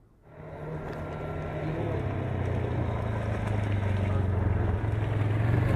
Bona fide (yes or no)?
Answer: yes